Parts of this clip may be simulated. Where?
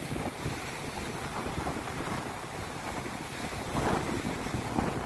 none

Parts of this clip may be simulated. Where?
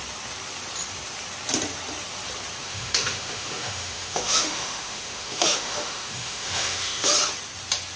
2.6-7.1 (autoencoder, DAC-VAE)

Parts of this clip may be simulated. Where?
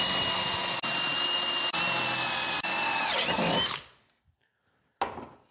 none